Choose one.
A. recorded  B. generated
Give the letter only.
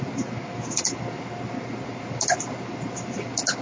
A